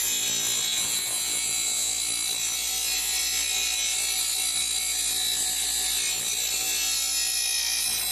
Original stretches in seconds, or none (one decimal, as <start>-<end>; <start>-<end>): 0.0-0.7; 1.9-8.1